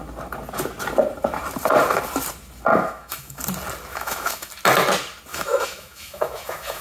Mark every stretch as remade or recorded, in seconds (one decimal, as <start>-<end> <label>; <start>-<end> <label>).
0.0-2.7 recorded; 2.7-3.4 remade; 3.4-3.9 recorded; 3.9-4.5 remade; 4.5-5.3 recorded; 5.3-6.8 remade